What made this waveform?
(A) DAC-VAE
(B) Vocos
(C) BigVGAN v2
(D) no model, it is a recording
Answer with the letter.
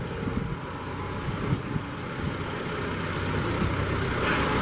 D